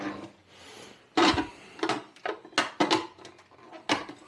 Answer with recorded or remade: recorded